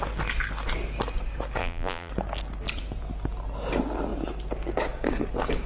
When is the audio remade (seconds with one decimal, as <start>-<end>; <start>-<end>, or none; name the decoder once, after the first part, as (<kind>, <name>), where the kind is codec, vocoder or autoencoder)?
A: 1.6-2.1 (vocoder, BigVGAN v2)